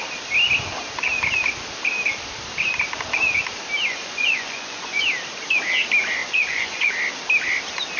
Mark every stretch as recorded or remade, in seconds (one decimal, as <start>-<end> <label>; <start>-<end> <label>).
0.0-3.9 recorded; 3.9-5.0 remade; 5.0-6.2 recorded; 6.2-6.9 remade; 6.9-8.0 recorded